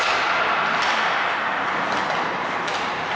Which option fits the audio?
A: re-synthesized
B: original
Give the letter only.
B